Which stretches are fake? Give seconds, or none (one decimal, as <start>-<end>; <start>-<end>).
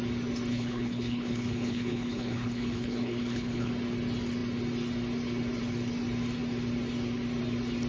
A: 0.5-3.7